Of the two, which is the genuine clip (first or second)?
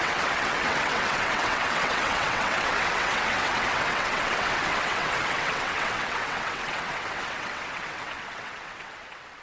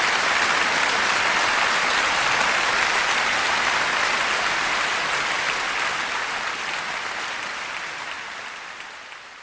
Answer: second